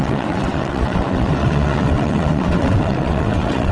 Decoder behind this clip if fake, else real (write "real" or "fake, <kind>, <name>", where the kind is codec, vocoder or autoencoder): fake, vocoder, WaveNeXt